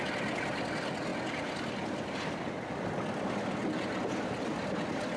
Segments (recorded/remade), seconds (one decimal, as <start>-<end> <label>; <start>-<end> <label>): 0.0-5.2 recorded